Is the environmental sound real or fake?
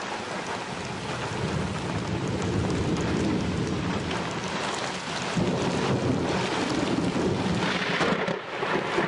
real